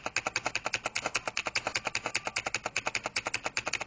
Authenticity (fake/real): real